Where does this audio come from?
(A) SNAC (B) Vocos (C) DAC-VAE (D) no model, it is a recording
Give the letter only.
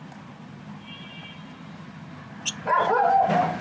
D